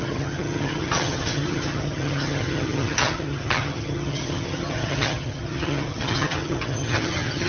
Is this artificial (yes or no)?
yes